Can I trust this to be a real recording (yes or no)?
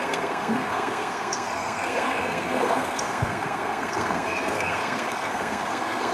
no